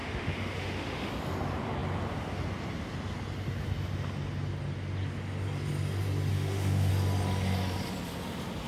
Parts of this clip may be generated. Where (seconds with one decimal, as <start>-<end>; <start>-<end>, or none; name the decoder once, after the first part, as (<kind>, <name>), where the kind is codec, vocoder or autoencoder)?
0.0-1.1 (autoencoder, DAC-VAE); 6.3-6.9